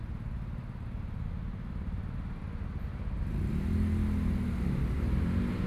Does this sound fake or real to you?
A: real